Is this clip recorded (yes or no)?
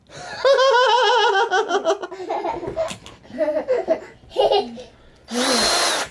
yes